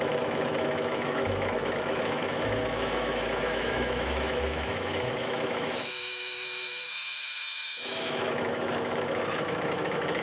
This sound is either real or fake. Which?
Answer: fake